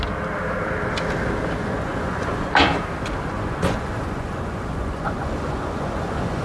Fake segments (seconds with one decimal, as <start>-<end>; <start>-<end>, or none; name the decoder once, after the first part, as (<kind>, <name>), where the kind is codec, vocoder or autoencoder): 1.6-2.5 (vocoder, Vocos); 3.3-6.4